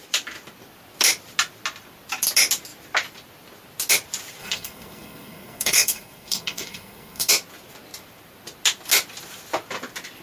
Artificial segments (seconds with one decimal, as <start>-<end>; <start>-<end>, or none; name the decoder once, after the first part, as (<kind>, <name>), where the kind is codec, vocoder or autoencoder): 4.4-7.3 (codec, SNAC)